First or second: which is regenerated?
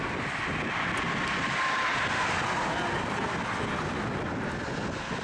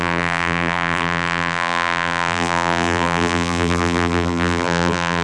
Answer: second